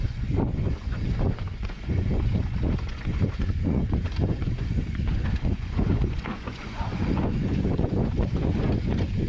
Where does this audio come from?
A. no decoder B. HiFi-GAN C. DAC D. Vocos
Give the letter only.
D